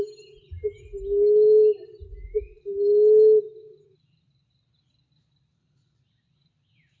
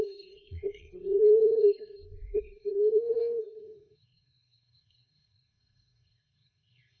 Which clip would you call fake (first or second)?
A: second